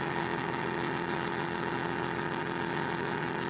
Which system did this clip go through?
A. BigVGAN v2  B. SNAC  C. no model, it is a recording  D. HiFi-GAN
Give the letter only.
D